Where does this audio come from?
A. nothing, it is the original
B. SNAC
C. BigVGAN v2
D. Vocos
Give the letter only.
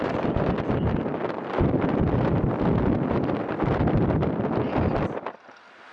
C